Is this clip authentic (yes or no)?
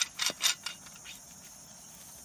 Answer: yes